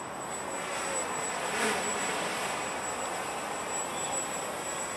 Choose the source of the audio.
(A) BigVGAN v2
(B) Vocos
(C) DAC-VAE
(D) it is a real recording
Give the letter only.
A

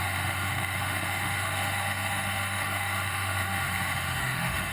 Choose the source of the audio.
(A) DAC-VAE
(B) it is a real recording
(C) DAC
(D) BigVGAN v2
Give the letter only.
A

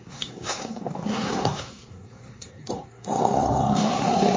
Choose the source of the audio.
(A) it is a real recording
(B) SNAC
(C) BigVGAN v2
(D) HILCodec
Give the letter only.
B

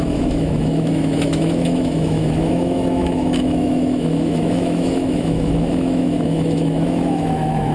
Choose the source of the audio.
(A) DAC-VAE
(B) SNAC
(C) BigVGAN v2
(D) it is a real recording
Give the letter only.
A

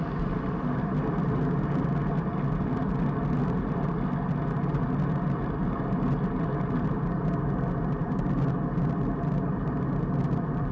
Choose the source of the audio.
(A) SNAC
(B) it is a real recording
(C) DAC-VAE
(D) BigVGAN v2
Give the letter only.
B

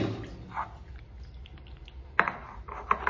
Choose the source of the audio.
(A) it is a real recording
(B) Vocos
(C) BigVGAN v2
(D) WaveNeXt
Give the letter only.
C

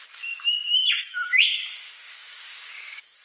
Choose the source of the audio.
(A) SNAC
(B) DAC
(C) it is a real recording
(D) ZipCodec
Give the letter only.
B